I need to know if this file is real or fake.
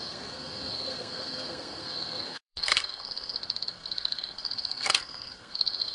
fake